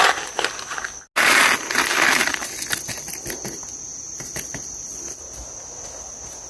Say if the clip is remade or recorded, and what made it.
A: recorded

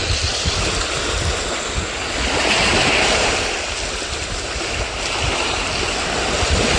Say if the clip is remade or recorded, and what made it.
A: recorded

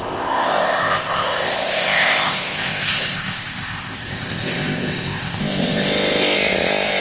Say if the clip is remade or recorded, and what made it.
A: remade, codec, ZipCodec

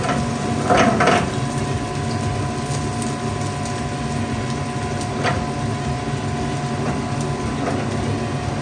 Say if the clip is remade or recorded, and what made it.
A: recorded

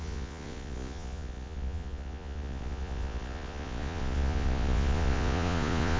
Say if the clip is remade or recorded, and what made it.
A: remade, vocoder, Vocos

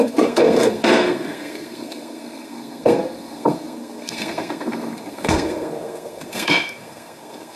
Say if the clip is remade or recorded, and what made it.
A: remade, codec, SNAC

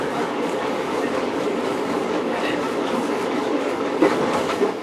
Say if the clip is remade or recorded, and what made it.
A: remade, codec, DAC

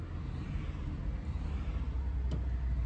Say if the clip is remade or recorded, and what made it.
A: recorded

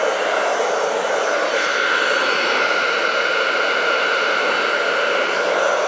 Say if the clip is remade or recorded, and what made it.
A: remade, vocoder, BigVGAN v2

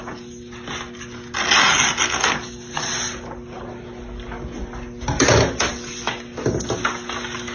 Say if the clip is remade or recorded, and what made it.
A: recorded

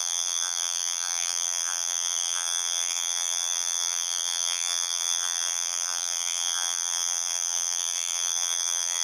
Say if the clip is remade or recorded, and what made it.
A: remade, vocoder, BigVGAN v2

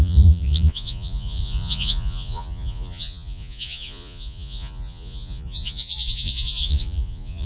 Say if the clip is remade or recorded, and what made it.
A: remade, vocoder, Vocos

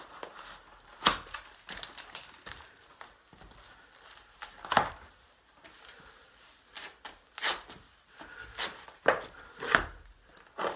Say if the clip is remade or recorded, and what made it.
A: recorded